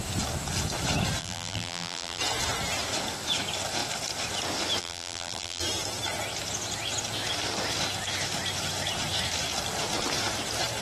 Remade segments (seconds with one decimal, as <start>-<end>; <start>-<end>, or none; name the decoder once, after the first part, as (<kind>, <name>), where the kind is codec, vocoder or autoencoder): 1.2-2.2 (vocoder, BigVGAN v2); 4.8-5.6